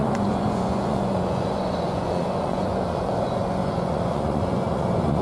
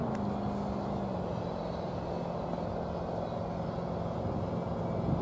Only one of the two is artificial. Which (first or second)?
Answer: first